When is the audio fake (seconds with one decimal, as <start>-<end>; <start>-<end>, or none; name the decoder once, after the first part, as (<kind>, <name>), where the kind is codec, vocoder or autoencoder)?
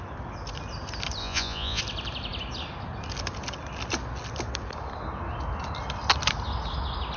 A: 1.2-1.8 (vocoder, Vocos)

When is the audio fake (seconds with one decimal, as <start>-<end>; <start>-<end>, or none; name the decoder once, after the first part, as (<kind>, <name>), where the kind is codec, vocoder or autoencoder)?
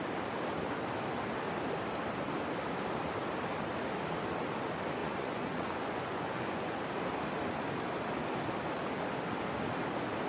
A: 5.0-6.8 (vocoder, Vocos)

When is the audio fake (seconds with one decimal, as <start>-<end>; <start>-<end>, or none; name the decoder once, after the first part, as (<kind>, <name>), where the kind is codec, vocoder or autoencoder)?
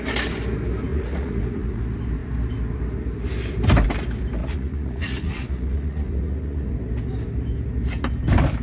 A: 0.9-1.8 (vocoder, Vocos); 4.4-6.7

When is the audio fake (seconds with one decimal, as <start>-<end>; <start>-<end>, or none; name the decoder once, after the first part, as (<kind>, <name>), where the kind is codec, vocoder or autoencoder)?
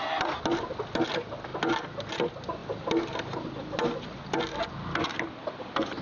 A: none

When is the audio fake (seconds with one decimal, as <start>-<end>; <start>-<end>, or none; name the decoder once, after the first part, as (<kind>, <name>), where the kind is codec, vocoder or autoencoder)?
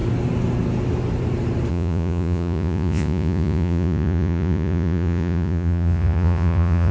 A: 1.7-6.9 (vocoder, Vocos)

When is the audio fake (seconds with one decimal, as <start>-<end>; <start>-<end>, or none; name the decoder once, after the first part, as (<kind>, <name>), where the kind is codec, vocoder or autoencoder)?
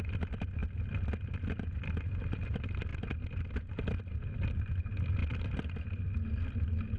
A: none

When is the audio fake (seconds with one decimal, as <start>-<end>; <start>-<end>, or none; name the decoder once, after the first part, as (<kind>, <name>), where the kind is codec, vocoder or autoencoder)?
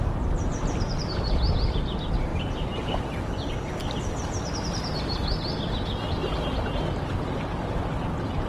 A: none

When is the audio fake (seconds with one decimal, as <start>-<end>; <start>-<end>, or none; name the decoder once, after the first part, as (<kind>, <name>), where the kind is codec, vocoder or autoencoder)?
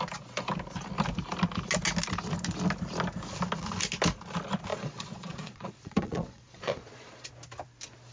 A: 4.7-7.3 (vocoder, Vocos)